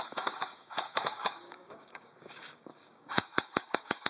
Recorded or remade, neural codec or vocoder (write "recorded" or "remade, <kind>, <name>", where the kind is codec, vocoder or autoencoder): remade, codec, DAC